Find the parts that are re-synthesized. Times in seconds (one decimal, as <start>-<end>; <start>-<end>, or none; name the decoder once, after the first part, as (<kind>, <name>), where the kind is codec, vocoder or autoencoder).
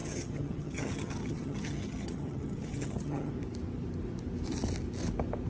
0.0-3.3 (vocoder, HiFi-GAN)